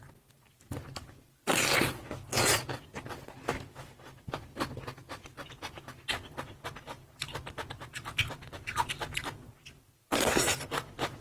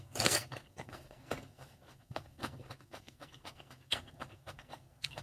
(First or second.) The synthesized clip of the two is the second